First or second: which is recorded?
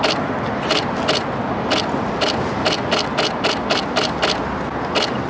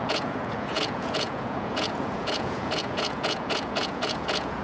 first